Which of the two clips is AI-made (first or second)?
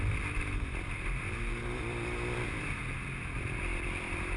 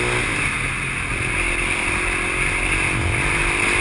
first